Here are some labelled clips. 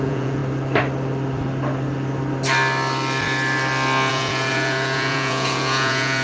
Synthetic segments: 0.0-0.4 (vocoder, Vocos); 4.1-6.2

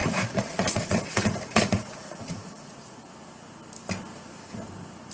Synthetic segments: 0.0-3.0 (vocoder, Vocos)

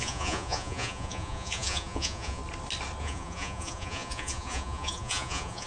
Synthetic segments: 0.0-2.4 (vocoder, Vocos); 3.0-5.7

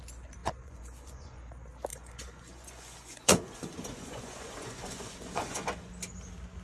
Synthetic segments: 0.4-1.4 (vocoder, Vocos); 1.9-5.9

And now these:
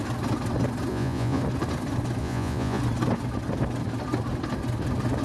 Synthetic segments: 0.9-1.4 (vocoder, Vocos); 2.2-2.8